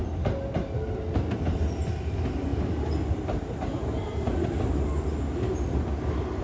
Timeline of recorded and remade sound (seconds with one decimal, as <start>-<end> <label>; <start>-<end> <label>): 0.0-6.4 recorded